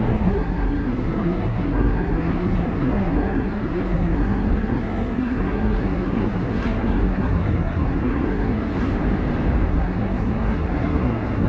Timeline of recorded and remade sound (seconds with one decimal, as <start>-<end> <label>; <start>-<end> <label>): 0.0-8.9 remade; 8.9-9.7 recorded; 9.7-11.5 remade